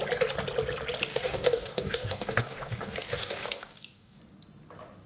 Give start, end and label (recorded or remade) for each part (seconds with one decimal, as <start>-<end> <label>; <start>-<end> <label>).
0.0-1.1 recorded; 1.1-4.2 remade; 4.2-5.1 recorded

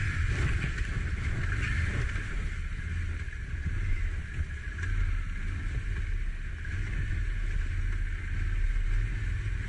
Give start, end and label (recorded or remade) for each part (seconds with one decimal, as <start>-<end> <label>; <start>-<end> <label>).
0.0-9.7 recorded

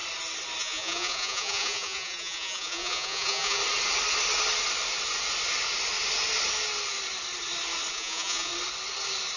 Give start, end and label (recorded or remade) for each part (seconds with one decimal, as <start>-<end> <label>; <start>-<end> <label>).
0.0-0.6 recorded; 0.6-3.6 remade; 3.6-7.9 recorded; 7.9-8.5 remade; 8.5-9.4 recorded

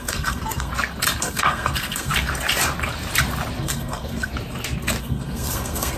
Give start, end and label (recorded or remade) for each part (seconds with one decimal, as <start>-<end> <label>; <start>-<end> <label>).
0.0-0.7 remade; 0.7-1.2 recorded; 1.2-2.1 remade; 2.1-3.6 recorded; 3.6-4.3 remade; 4.3-5.0 recorded; 5.0-6.0 remade

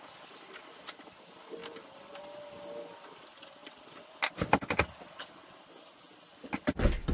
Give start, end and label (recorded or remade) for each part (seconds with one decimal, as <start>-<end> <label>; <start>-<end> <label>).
0.0-1.6 recorded; 1.6-2.2 remade; 2.2-3.6 recorded; 3.6-4.2 remade; 4.2-7.1 recorded